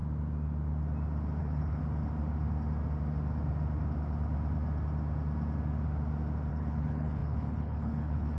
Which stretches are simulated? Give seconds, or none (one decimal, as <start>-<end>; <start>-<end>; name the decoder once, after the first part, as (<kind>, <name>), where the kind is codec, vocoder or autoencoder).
1.4-1.8 (codec, HILCodec); 6.5-8.4